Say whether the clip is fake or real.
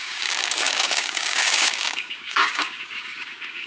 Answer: fake